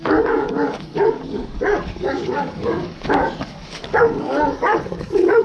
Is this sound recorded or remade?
remade